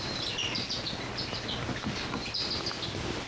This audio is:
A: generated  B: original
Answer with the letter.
B